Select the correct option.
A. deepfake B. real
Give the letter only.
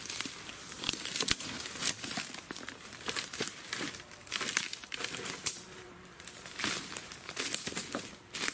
B